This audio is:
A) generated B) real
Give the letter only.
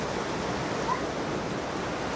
B